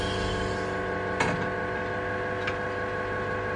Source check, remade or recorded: recorded